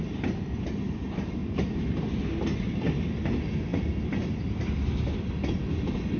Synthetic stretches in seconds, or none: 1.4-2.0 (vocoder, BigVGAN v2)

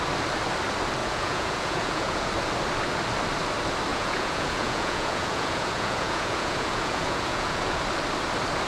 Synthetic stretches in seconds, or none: 1.0-2.3 (vocoder, Vocos); 3.9-7.8